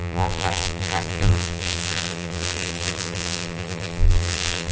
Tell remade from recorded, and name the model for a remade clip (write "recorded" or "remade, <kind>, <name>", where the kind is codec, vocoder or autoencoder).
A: remade, vocoder, BigVGAN v2